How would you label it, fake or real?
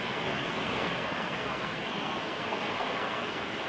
fake